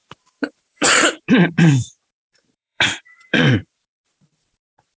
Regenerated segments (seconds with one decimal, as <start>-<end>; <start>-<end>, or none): 0.0-5.0